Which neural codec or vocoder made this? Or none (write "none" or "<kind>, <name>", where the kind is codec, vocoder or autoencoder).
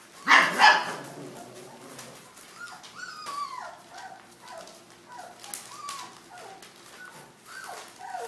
none